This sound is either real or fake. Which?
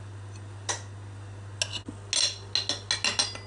real